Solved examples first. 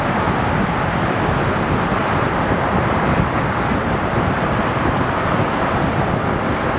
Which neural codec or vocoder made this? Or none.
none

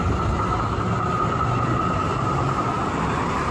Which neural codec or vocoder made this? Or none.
none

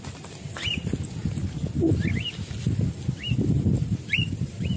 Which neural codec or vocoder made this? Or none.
none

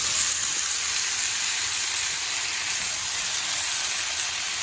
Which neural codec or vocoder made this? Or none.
none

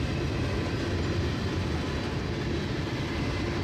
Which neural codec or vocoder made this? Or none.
none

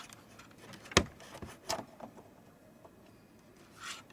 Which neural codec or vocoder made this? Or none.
none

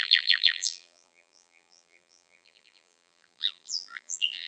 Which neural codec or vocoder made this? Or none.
vocoder, BigVGAN v2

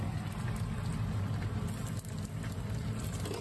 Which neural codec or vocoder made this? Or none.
none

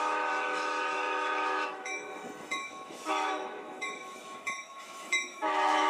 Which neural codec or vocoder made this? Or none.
autoencoder, DAC-VAE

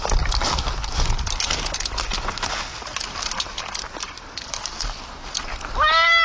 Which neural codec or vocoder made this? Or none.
none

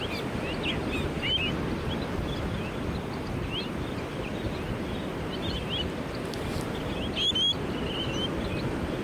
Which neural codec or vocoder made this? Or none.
none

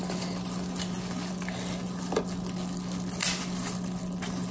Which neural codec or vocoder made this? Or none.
none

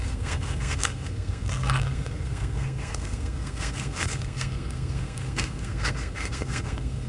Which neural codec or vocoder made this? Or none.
codec, SNAC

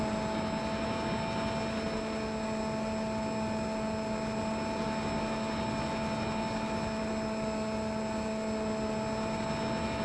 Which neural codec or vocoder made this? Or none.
none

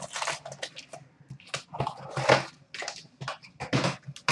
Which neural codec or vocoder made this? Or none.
none